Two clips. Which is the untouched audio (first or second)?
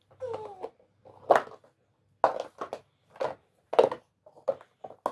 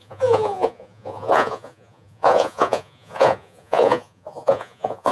first